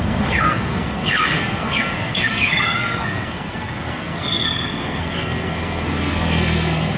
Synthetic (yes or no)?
yes